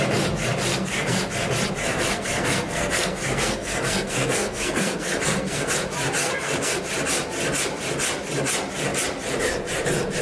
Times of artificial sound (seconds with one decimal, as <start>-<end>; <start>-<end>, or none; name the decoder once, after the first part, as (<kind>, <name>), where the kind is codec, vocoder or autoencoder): 0.7-1.3 (codec, SNAC); 1.8-5.7; 6.2-6.8